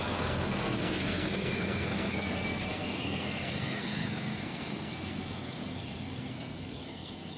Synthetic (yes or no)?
yes